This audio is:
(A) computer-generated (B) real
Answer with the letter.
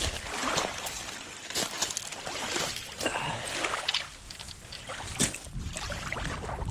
B